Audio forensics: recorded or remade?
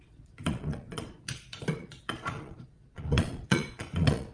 remade